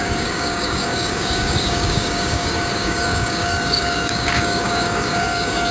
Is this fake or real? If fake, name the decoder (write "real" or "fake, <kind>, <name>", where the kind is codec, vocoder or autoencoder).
fake, codec, DAC